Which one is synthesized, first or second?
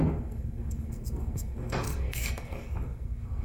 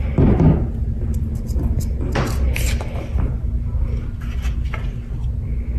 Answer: first